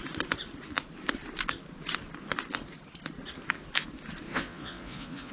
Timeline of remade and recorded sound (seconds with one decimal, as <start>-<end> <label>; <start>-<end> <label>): 0.0-4.3 recorded; 4.3-5.3 remade